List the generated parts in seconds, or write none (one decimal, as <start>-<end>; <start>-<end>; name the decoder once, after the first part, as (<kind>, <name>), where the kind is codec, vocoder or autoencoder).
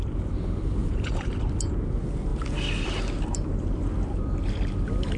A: 0.8-1.3 (vocoder, Vocos)